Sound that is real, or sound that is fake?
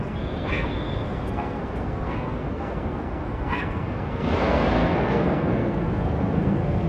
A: fake